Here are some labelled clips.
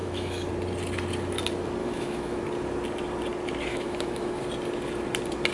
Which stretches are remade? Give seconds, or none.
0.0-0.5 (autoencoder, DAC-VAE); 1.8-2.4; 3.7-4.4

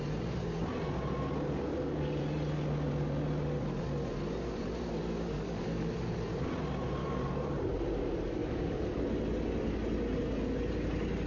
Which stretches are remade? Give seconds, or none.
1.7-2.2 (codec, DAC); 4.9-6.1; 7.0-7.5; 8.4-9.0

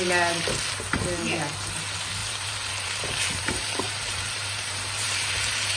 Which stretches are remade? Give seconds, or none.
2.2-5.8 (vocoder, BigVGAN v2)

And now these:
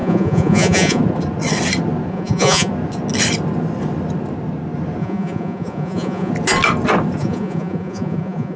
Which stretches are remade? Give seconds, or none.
0.0-1.0 (vocoder, Vocos); 2.1-2.7; 5.0-6.3; 7.2-8.6

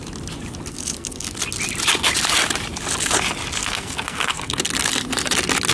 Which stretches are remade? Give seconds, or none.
0.7-1.4 (codec, SNAC); 3.6-4.6

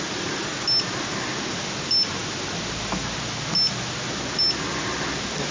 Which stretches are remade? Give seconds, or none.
none